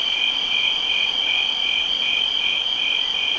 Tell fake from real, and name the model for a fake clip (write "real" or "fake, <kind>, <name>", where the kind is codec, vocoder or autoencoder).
real